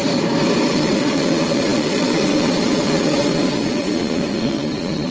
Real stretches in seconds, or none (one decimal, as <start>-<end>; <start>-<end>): 0.0-0.7